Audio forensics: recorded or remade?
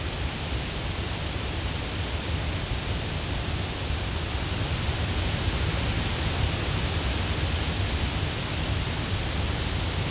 recorded